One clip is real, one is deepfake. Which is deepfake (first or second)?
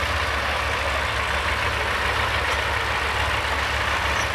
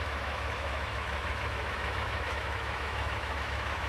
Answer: second